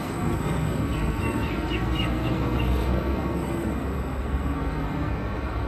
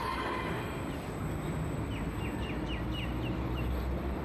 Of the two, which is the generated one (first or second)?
first